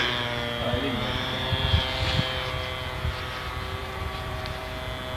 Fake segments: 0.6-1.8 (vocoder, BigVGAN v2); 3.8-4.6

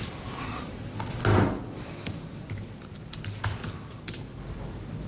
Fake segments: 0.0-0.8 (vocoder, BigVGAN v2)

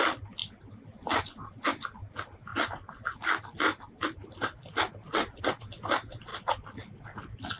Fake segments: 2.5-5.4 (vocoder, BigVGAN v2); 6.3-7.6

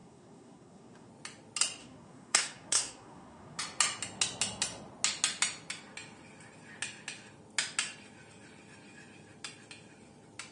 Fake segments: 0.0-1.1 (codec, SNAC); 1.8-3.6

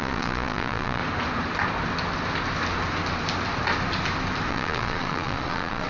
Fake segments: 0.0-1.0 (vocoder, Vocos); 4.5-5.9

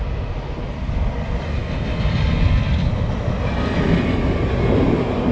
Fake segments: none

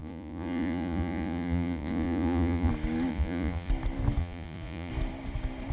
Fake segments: 0.0-2.7 (vocoder, Vocos); 3.1-3.7; 4.2-4.9

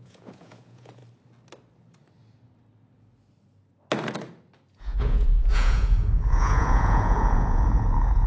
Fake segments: 0.0-1.0 (vocoder, Vocos); 4.7-8.3